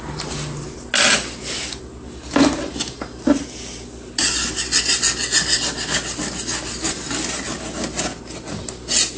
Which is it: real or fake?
real